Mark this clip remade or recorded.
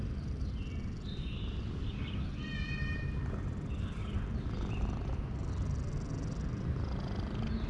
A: recorded